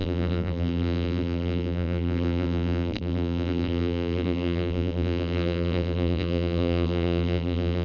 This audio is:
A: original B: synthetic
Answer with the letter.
B